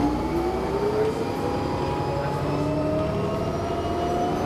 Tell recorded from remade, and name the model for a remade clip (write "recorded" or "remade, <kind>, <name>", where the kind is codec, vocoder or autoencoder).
recorded